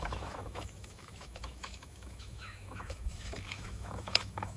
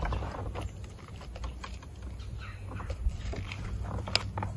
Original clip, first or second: second